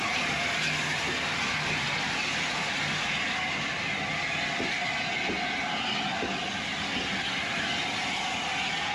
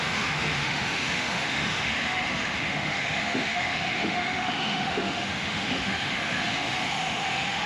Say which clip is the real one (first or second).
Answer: first